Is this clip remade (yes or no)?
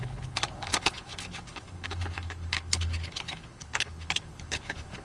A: yes